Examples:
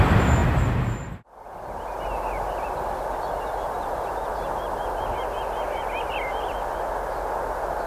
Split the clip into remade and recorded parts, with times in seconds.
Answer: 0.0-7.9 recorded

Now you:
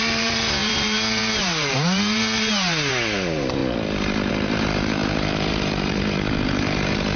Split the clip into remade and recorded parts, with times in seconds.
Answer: 0.0-3.6 remade; 3.6-4.3 recorded; 4.3-7.2 remade

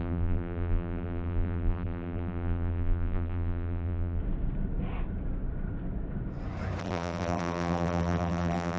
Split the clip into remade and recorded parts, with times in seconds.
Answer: 0.0-4.2 remade; 4.2-6.8 recorded; 6.8-8.8 remade

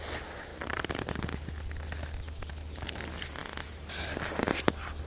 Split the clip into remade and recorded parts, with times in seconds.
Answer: 0.0-0.5 recorded; 0.5-2.5 remade; 2.5-3.4 recorded; 3.4-5.1 remade

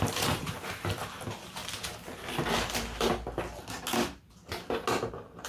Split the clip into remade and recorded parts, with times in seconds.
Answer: 0.0-1.6 remade; 1.6-4.9 recorded; 4.9-5.5 remade

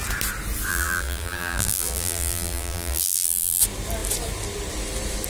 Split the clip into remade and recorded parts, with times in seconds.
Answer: 0.0-0.7 recorded; 0.7-3.6 remade; 3.6-5.3 recorded

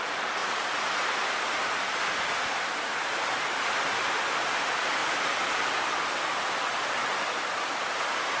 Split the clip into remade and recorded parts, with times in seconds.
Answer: 0.0-5.0 recorded; 5.0-7.5 remade; 7.5-8.4 recorded

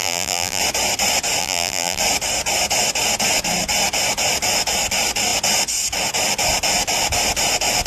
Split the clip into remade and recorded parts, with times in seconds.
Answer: 0.0-0.6 remade; 0.6-1.4 recorded; 1.4-2.0 remade; 2.0-7.9 recorded